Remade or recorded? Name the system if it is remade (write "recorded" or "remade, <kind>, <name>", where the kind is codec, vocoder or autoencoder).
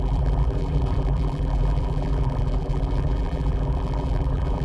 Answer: remade, vocoder, BigVGAN v2